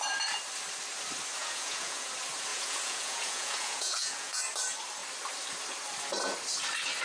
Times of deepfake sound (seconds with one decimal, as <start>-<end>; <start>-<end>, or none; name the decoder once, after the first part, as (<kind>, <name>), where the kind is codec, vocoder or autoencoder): 1.4-2.1 (vocoder, Vocos); 2.5-4.4